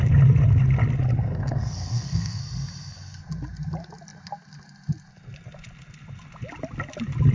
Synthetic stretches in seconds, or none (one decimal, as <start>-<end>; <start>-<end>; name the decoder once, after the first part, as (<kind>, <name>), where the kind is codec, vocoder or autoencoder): 1.2-2.4 (codec, SNAC)